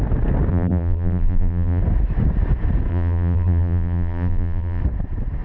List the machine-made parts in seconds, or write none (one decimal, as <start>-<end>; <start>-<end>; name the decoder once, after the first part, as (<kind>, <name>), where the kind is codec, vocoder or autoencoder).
0.5-1.8 (vocoder, BigVGAN v2); 2.9-4.8